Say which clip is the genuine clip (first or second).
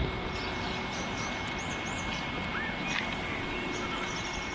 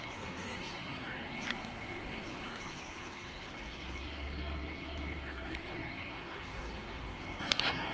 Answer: first